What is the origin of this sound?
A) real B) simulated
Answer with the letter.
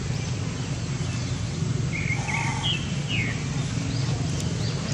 A